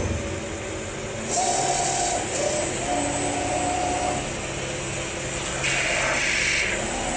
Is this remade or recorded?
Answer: recorded